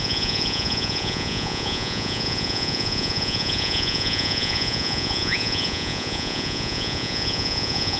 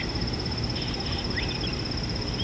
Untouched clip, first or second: second